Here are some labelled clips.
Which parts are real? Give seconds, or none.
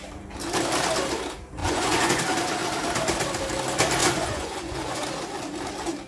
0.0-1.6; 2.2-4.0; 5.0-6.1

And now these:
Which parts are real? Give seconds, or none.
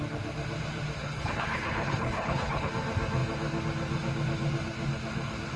0.0-1.0; 2.7-5.6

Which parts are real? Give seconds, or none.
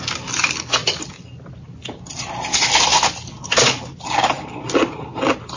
0.0-5.6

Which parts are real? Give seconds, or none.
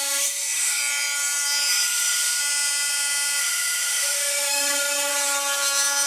0.8-1.7; 2.4-3.4; 5.1-6.1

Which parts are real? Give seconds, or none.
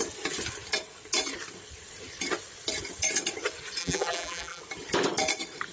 0.0-3.8; 4.6-5.7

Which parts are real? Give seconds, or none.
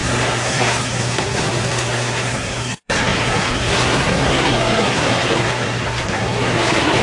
none